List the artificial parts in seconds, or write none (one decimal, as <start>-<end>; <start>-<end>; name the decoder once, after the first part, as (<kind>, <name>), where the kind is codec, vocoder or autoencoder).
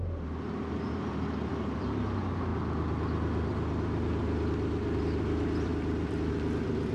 none